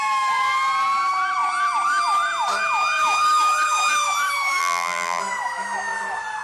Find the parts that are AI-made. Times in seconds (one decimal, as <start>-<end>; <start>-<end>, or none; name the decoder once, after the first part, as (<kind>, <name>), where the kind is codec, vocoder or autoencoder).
4.6-5.2 (vocoder, BigVGAN v2)